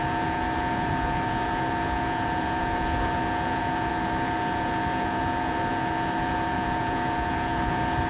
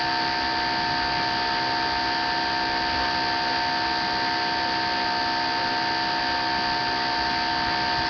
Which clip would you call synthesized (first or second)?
first